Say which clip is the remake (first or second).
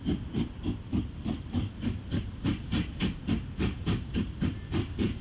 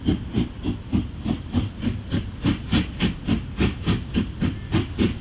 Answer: first